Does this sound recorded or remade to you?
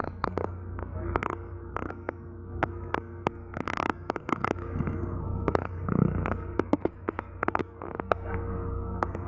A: remade